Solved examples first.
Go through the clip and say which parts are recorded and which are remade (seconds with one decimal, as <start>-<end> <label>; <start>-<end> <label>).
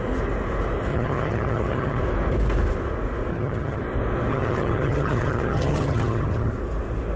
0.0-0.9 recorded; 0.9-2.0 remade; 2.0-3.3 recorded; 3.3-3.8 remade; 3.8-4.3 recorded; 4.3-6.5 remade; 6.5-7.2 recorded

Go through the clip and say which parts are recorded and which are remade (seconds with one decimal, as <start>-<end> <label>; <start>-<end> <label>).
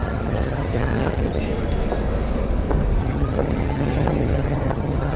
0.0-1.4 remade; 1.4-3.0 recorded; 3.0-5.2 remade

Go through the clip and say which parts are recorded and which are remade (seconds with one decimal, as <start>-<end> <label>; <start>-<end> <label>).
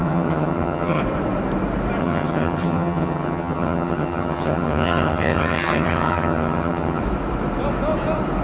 0.0-1.0 remade; 1.0-2.0 recorded; 2.0-7.0 remade; 7.0-8.4 recorded